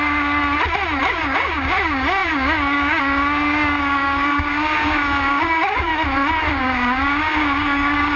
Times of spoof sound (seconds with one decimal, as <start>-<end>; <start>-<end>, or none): 0.0-0.4; 1.0-5.9; 6.5-8.2